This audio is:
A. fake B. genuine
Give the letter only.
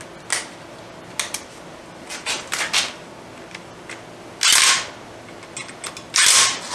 B